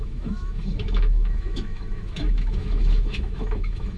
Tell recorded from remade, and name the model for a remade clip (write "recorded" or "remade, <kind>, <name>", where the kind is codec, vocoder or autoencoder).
remade, autoencoder, DAC-VAE